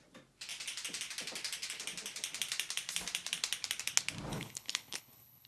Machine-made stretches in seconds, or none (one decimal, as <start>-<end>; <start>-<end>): 4.3-5.5